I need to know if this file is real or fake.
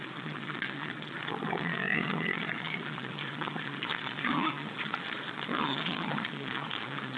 fake